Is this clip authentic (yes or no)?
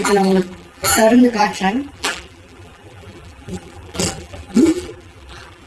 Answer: no